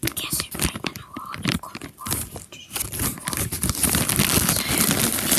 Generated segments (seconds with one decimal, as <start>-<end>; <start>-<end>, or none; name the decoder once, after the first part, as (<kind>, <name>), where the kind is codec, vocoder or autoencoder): none